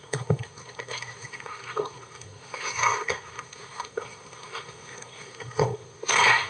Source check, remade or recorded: remade